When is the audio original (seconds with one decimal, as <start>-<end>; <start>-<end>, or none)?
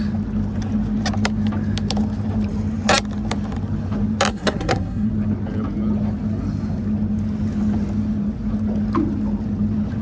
0.0-4.3; 5.1-10.0